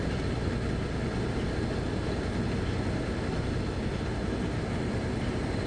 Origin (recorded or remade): recorded